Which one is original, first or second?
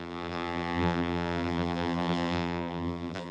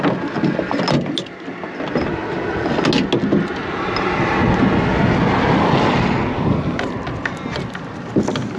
second